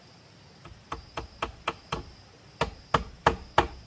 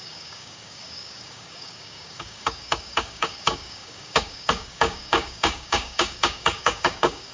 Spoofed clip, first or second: second